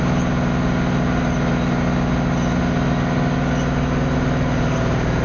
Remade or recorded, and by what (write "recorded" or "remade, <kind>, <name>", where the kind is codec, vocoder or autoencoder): recorded